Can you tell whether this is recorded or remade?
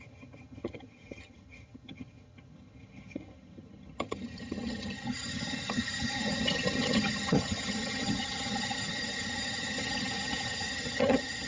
remade